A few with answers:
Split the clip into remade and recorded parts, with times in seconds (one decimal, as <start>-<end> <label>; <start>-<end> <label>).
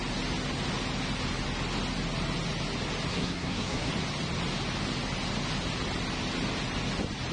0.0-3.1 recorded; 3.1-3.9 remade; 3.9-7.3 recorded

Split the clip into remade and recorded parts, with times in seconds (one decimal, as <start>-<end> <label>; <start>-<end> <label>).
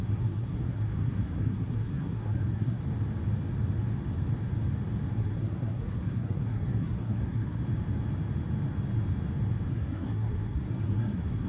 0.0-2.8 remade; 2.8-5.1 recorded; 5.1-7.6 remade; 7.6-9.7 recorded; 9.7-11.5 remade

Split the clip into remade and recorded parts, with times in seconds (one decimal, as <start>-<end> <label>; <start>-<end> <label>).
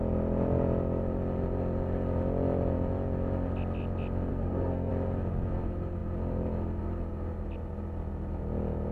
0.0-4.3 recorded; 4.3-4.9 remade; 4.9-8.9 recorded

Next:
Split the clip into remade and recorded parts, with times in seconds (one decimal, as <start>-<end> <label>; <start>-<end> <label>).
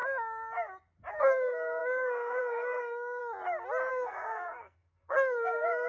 0.0-1.1 recorded; 1.1-3.2 remade; 3.2-3.9 recorded; 3.9-5.9 remade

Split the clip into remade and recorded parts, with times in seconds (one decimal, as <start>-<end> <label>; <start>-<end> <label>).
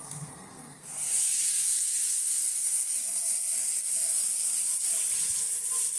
0.0-4.6 remade; 4.6-6.0 recorded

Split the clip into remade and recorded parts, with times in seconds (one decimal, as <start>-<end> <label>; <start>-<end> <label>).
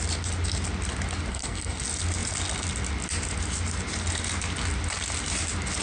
0.0-1.3 recorded; 1.3-1.8 remade; 1.8-5.8 recorded